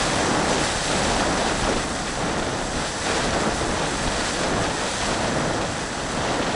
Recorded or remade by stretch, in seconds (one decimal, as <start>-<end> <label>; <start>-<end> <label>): 0.0-6.6 recorded